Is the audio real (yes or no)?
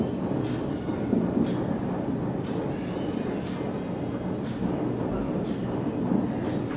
yes